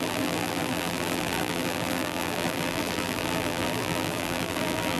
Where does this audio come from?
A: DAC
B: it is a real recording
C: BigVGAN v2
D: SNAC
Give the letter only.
C